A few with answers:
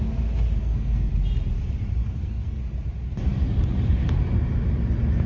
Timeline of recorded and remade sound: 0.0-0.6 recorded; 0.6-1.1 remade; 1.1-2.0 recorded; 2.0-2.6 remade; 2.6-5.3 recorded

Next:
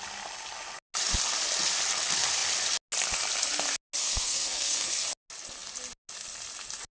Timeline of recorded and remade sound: 0.0-4.0 recorded; 4.0-4.9 remade; 4.9-7.0 recorded

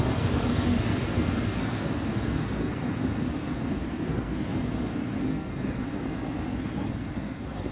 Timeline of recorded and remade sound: 0.0-7.7 remade

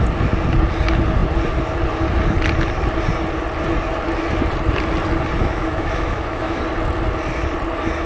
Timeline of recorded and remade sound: 0.0-5.4 recorded; 5.4-6.6 remade; 6.6-8.1 recorded